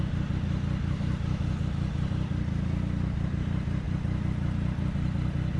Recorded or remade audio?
recorded